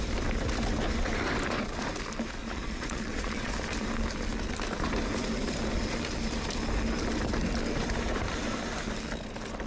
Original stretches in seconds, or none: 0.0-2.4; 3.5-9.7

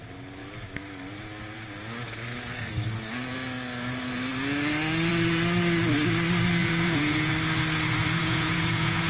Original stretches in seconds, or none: 0.0-6.6; 7.3-8.2

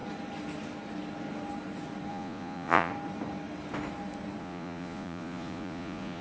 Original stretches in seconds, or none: 0.0-2.1; 2.9-4.4

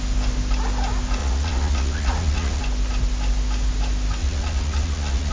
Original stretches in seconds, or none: 0.0-1.2; 2.6-4.2

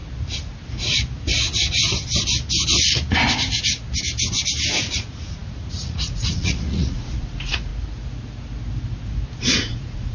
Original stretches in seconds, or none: 0.0-4.7; 7.7-9.4

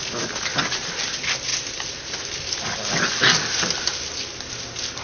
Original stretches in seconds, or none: 0.0-5.0

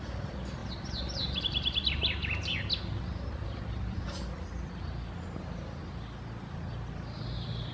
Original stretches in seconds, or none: 0.0-7.7

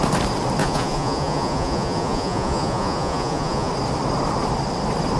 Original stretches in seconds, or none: 0.0-0.6; 3.7-5.2